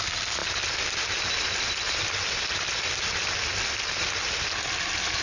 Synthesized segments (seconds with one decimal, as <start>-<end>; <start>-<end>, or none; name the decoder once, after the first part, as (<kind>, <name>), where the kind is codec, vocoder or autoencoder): none